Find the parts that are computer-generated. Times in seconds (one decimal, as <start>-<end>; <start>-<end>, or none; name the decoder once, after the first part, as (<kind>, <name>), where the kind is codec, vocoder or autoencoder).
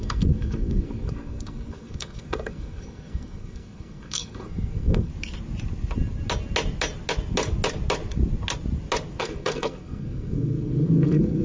0.0-5.1 (codec, SNAC); 9.2-11.4